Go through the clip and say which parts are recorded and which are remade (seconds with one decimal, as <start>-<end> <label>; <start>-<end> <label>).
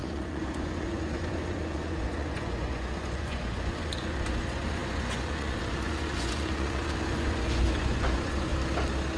0.0-8.5 remade; 8.5-9.2 recorded